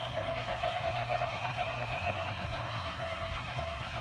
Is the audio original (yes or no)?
no